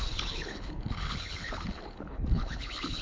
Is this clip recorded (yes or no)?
no